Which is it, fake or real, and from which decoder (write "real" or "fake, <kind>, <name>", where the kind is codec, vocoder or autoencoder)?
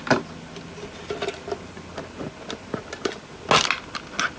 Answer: real